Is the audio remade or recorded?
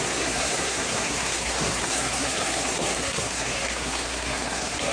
remade